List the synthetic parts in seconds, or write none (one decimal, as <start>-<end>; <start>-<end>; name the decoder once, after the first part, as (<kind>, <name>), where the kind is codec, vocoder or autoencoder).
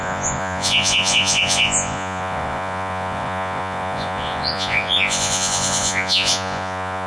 0.0-7.1 (vocoder, Vocos)